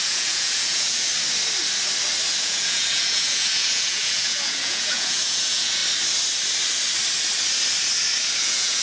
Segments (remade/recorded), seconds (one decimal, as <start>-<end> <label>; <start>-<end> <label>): 0.0-1.1 remade; 1.1-2.4 recorded; 2.4-5.8 remade; 5.8-8.4 recorded; 8.4-8.8 remade